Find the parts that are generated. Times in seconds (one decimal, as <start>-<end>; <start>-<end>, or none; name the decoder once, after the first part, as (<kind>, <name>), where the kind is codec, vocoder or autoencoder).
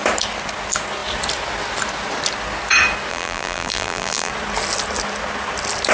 3.1-4.3 (vocoder, BigVGAN v2)